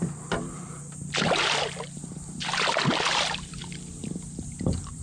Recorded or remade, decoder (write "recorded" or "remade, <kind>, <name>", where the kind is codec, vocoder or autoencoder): remade, vocoder, BigVGAN v2